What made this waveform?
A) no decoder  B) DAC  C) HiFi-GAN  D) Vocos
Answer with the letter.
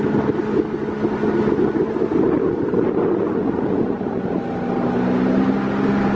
A